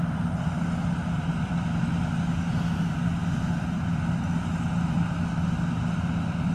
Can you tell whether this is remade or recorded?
recorded